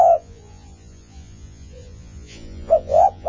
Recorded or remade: remade